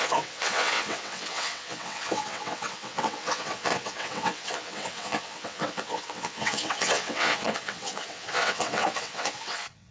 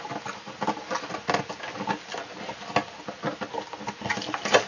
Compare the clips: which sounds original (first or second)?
second